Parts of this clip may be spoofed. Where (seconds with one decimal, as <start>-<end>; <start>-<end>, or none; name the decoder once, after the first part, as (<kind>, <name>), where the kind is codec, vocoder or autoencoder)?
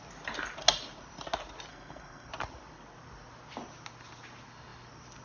1.7-2.3 (codec, SNAC)